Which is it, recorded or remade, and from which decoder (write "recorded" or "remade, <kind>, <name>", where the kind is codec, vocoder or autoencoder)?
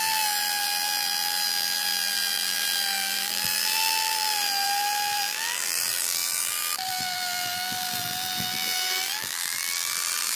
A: remade, vocoder, BigVGAN v2